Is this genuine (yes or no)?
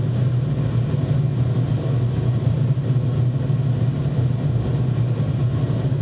yes